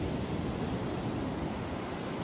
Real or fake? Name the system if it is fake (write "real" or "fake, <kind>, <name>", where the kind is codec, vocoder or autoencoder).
real